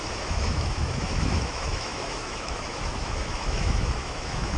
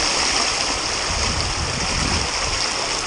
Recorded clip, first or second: second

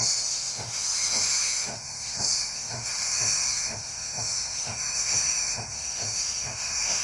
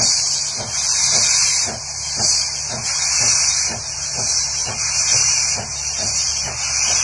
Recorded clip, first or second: second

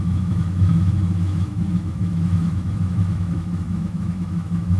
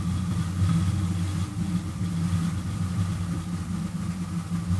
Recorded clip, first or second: second